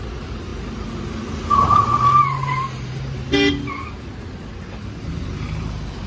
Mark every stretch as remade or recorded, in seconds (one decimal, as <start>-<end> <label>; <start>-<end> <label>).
0.0-6.1 recorded